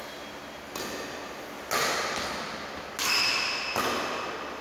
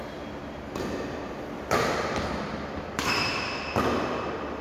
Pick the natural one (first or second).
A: first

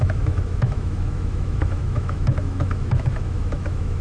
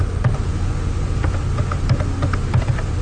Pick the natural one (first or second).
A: second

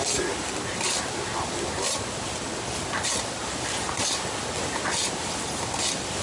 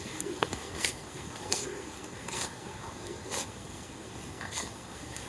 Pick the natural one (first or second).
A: first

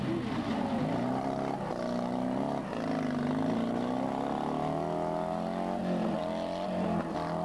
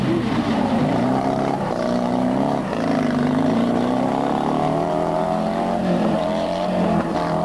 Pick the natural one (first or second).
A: first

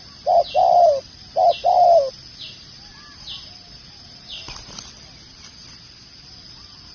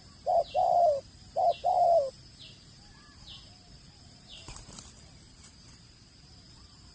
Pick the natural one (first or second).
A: first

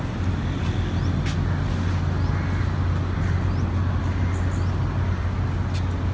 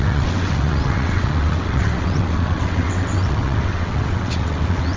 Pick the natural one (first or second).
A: first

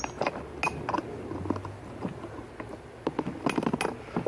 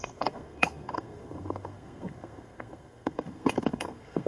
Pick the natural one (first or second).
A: first